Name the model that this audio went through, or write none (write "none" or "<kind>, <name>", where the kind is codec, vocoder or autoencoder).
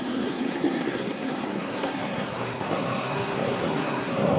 codec, SNAC